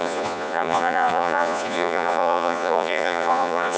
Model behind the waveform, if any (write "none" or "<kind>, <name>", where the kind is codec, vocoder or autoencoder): vocoder, Vocos